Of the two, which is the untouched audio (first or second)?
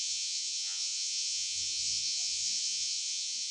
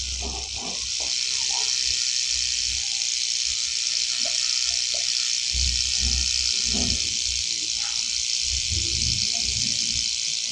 second